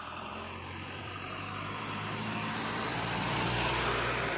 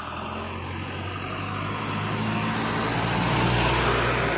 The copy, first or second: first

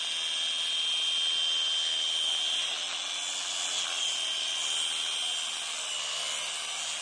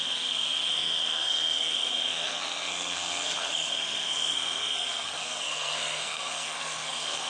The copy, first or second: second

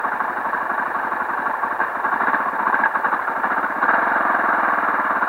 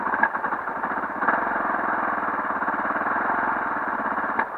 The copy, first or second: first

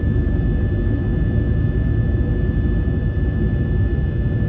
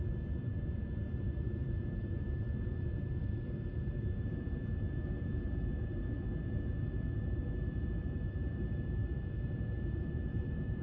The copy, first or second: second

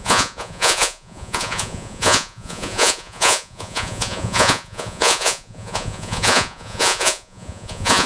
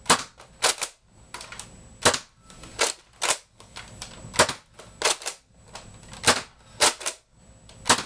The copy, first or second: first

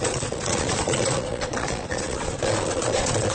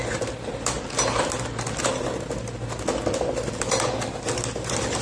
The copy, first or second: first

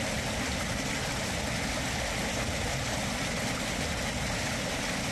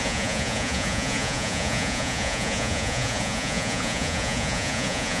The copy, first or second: second